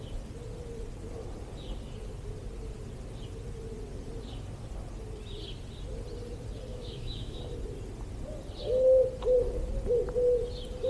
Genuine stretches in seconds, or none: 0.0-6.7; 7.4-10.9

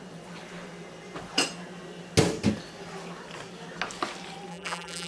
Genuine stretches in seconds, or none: 0.0-4.5

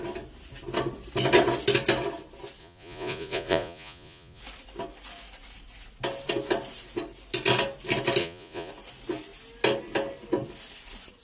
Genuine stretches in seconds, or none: 0.0-2.6; 4.4-8.2; 8.7-11.2

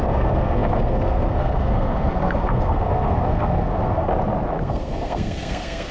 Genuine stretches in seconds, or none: 4.1-4.6

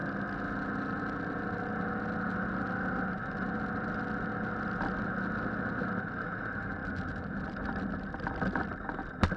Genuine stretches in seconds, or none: 0.0-9.4

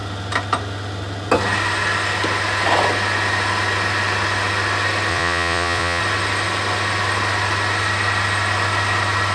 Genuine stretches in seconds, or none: 0.0-5.1; 6.0-9.3

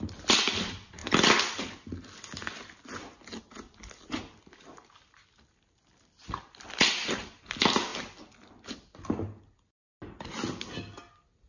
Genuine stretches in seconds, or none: 0.0-11.5